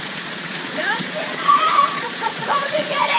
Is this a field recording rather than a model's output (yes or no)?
no